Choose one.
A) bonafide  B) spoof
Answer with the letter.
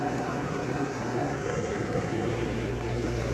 B